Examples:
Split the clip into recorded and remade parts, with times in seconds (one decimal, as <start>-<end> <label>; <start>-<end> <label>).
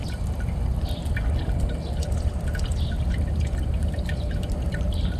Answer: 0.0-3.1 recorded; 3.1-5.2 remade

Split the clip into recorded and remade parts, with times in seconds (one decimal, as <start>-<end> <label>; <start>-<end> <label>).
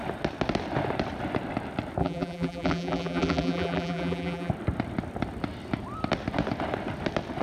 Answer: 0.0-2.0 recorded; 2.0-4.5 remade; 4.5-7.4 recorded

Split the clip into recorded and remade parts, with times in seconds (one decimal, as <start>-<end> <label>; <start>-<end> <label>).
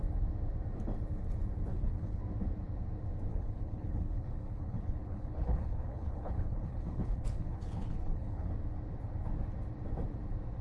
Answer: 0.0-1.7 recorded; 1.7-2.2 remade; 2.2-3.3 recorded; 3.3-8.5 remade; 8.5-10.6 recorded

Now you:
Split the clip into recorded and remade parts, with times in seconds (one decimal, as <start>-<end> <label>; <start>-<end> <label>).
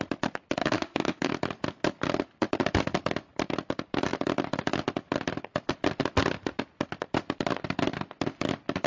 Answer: 0.0-0.6 recorded; 0.6-1.3 remade; 1.3-8.9 recorded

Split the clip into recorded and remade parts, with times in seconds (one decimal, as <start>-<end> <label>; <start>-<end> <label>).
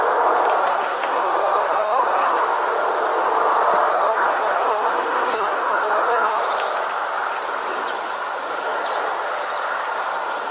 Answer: 0.0-0.6 recorded; 0.6-2.4 remade; 2.4-3.9 recorded; 3.9-6.4 remade; 6.4-10.5 recorded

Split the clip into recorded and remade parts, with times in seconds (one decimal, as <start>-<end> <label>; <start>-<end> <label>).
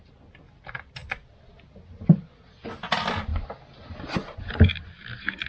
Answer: 0.0-5.5 recorded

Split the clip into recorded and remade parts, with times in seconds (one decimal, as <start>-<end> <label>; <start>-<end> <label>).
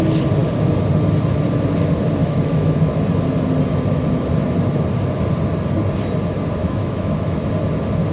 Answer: 0.0-2.2 recorded; 2.2-3.0 remade; 3.0-6.6 recorded; 6.6-7.5 remade; 7.5-8.1 recorded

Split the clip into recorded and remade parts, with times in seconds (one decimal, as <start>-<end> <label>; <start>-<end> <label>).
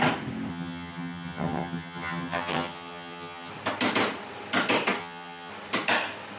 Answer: 0.0-0.5 recorded; 0.5-3.5 remade; 3.5-5.0 recorded; 5.0-5.5 remade; 5.5-6.4 recorded